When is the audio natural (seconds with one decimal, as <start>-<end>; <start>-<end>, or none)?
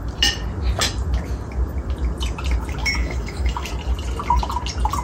0.0-2.8; 3.7-5.0